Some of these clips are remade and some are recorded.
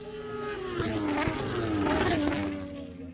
recorded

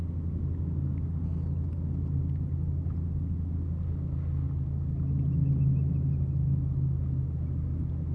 recorded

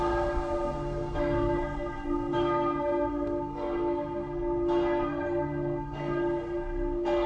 remade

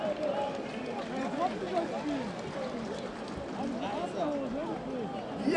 recorded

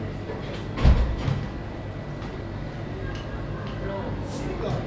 recorded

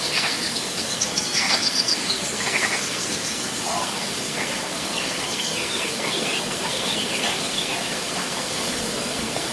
remade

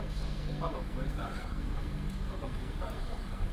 remade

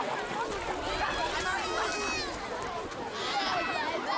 recorded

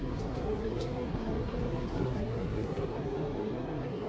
remade